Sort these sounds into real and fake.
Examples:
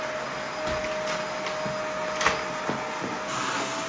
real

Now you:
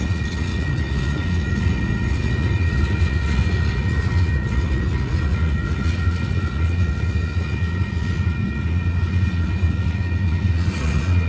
fake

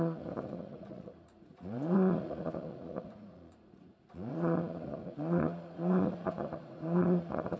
fake